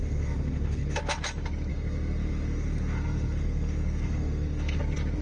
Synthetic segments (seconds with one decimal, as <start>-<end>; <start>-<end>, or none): 0.0-1.0; 1.7-4.8